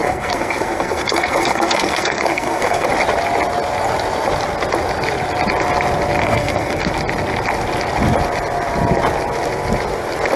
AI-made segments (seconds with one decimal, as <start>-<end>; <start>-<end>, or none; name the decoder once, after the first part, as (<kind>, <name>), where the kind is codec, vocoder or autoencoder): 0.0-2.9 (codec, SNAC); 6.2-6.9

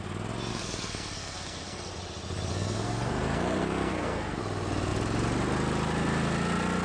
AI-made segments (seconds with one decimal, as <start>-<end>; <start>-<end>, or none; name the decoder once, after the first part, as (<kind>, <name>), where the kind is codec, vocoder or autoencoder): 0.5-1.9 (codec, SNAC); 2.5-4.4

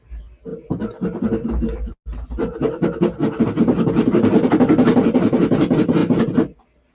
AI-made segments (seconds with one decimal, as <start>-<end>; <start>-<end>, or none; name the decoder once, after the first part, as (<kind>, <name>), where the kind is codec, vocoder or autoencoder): none